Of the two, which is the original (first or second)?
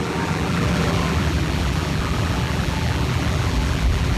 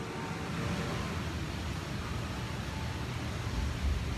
second